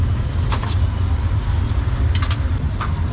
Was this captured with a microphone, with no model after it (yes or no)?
no